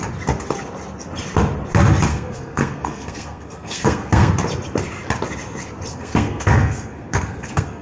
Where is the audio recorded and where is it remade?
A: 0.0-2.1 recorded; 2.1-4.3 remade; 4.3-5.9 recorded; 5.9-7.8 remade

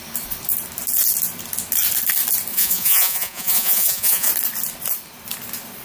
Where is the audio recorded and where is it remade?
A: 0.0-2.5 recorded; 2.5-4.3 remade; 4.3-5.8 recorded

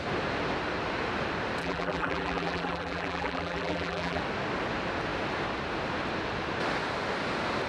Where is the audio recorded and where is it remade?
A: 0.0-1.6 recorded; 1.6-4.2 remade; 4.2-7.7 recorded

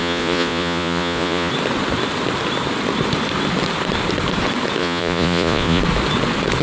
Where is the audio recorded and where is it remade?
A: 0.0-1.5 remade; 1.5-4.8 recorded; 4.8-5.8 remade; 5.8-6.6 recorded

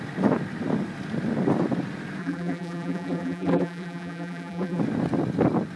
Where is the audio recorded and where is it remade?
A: 0.0-2.2 recorded; 2.2-4.8 remade; 4.8-5.8 recorded

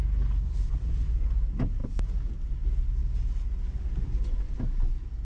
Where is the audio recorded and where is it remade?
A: 0.0-1.8 recorded; 1.8-2.3 remade; 2.3-5.2 recorded

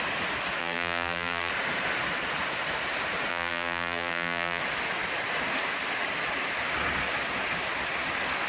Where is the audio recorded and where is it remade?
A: 0.0-0.6 recorded; 0.6-1.5 remade; 1.5-3.3 recorded; 3.3-4.6 remade; 4.6-8.5 recorded

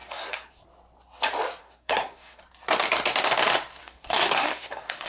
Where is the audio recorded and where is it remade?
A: 0.0-0.6 remade; 0.6-1.6 recorded; 1.6-2.4 remade; 2.4-3.8 recorded; 3.8-5.1 remade